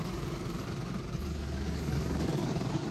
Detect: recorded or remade remade